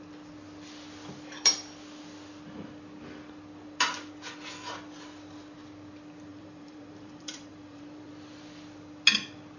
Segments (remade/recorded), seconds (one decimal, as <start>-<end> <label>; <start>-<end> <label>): 0.0-6.3 recorded; 6.3-8.1 remade; 8.1-9.6 recorded